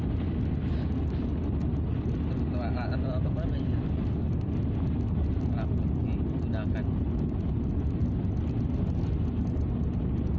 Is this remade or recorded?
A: recorded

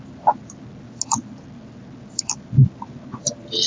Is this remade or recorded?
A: recorded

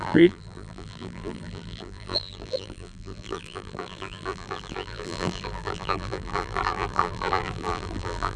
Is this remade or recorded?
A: remade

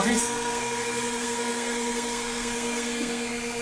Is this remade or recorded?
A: remade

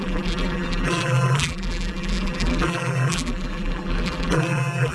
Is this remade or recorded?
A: remade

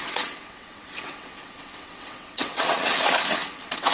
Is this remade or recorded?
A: remade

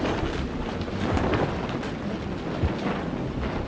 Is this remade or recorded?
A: recorded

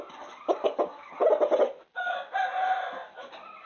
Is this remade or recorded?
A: recorded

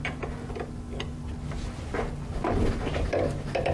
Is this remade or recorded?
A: recorded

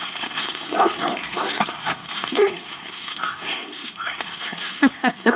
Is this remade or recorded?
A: remade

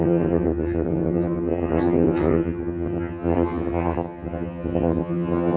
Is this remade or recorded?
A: remade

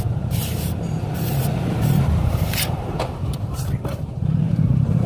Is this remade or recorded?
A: remade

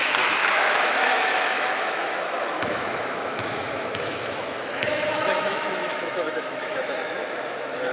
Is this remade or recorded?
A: remade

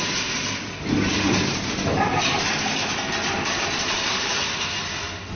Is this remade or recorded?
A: recorded